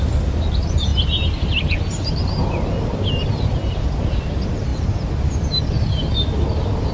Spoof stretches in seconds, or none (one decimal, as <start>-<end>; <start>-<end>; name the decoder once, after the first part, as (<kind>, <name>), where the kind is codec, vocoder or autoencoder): none